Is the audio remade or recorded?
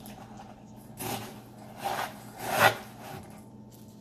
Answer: recorded